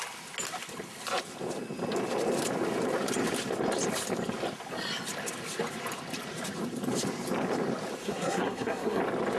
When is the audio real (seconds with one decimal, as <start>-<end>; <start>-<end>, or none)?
0.0-8.0; 9.0-9.4